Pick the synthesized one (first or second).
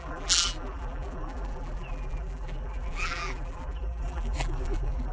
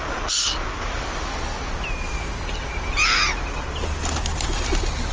first